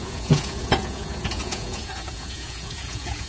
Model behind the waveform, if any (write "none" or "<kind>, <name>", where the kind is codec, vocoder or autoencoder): vocoder, Vocos